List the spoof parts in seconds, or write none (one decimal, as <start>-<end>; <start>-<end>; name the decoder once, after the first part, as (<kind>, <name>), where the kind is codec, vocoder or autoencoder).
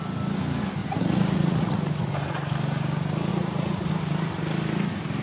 0.8-2.1 (vocoder, Vocos); 3.3-3.9